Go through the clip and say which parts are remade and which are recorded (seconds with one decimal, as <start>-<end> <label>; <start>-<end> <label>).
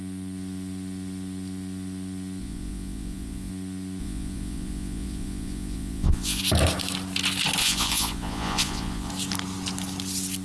0.0-2.4 recorded; 2.4-3.5 remade; 3.5-4.0 recorded; 4.0-6.4 remade; 6.4-7.6 recorded; 7.6-9.1 remade; 9.1-10.4 recorded